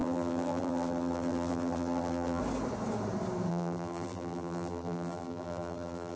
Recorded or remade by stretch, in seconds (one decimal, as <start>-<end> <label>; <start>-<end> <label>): 0.0-2.4 remade; 2.4-3.5 recorded; 3.5-6.2 remade